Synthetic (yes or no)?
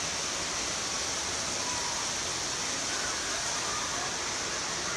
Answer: no